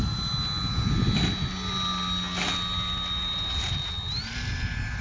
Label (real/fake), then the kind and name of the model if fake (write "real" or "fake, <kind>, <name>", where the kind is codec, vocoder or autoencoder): real